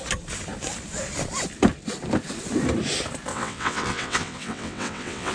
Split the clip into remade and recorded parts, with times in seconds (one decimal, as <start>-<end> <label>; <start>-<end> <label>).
0.0-3.3 recorded; 3.3-5.3 remade